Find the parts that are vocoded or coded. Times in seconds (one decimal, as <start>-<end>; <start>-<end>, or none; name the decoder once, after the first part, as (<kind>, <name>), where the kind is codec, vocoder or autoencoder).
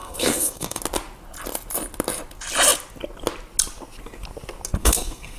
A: 0.0-0.8 (codec, SNAC); 4.8-5.4